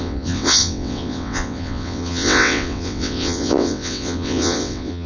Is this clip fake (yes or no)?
yes